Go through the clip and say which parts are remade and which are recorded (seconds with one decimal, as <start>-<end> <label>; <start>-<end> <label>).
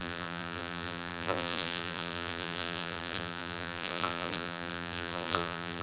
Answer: 0.0-5.8 remade